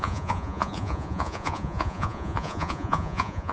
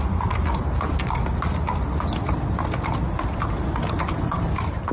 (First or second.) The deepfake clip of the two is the first